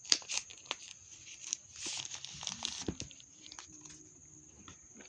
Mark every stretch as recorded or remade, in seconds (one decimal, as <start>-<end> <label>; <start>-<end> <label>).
0.0-0.5 remade; 0.5-3.3 recorded; 3.3-4.2 remade; 4.2-5.1 recorded